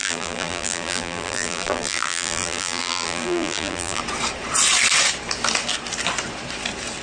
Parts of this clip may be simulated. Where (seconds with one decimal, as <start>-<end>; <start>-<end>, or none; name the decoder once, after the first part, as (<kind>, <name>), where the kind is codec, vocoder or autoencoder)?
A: 0.0-4.0 (vocoder, BigVGAN v2)